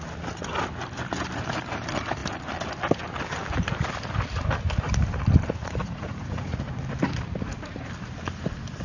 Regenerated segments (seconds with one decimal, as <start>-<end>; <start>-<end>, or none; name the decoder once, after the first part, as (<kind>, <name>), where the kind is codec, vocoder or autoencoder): 5.6-6.8 (vocoder, Vocos)